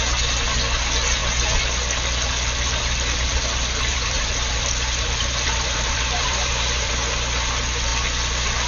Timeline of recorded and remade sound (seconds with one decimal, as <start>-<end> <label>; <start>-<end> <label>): 0.0-3.9 recorded; 3.9-6.9 remade; 6.9-8.7 recorded